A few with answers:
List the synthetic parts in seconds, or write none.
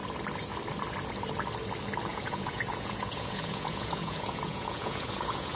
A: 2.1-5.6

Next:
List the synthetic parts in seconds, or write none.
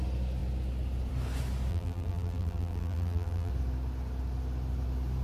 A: 1.7-3.5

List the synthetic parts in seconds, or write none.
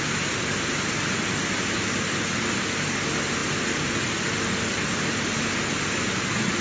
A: none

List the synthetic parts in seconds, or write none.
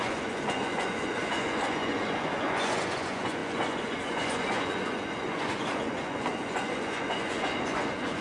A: 0.0-8.2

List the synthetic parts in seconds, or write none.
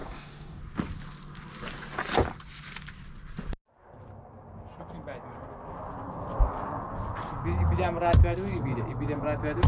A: 0.0-0.6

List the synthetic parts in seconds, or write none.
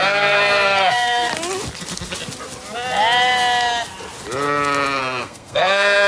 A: 0.0-1.3; 5.0-6.1